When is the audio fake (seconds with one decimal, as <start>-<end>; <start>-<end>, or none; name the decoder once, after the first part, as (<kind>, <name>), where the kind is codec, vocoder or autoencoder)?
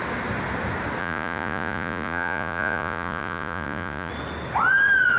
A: 1.0-4.1 (vocoder, Vocos)